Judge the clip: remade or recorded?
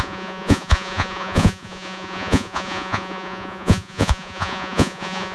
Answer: remade